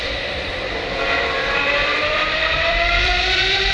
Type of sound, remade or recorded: remade